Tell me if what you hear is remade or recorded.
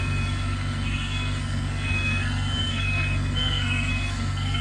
remade